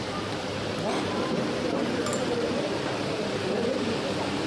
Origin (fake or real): fake